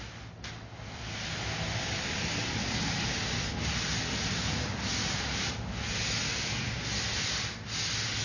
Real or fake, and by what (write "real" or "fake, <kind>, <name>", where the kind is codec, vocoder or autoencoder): real